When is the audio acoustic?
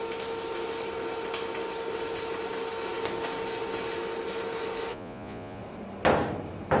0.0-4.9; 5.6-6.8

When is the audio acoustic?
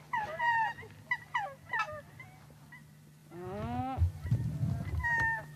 0.0-5.6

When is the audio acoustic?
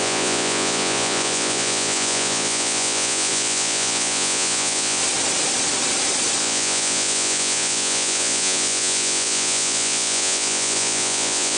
5.0-6.4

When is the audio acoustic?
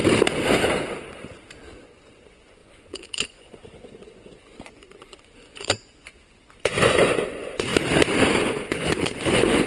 0.0-1.7; 7.7-8.4